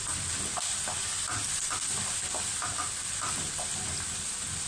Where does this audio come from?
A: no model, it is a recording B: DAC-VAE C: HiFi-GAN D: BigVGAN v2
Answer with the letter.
D